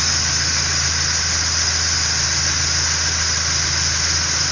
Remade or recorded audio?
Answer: recorded